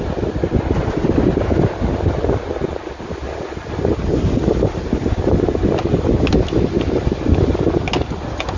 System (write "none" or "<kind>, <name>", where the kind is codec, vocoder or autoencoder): none